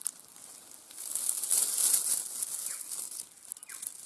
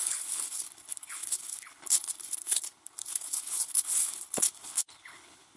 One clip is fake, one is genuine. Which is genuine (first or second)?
first